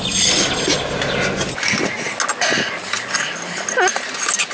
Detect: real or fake real